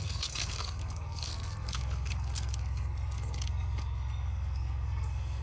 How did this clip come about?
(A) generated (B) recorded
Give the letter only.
A